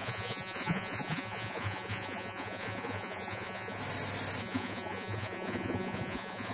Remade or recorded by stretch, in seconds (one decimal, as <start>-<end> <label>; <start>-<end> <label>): 0.0-3.8 remade; 3.8-4.4 recorded; 4.4-6.5 remade